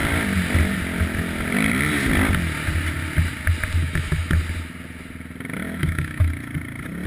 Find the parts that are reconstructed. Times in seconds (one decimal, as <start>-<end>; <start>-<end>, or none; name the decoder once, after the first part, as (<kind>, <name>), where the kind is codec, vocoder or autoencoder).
3.8-4.4 (autoencoder, DAC-VAE); 5.8-6.3